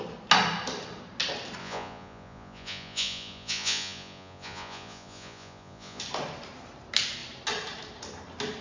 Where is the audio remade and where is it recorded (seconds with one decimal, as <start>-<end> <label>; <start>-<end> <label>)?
0.0-1.6 recorded; 1.6-6.0 remade; 6.0-8.6 recorded